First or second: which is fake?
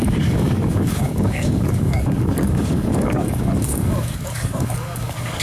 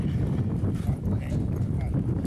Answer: first